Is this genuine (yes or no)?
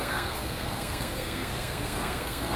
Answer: no